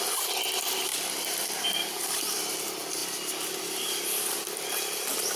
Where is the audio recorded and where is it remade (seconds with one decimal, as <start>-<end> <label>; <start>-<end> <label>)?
0.0-3.0 recorded; 3.0-5.4 remade